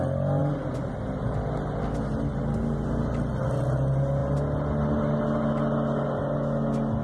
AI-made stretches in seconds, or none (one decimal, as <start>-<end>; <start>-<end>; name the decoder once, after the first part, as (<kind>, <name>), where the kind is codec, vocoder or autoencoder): none